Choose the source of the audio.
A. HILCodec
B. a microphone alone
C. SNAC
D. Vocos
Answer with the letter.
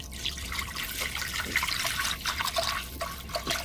B